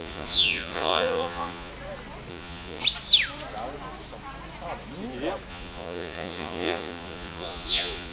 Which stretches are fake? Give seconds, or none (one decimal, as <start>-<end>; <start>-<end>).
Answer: 0.0-1.7; 2.3-2.8; 5.5-8.1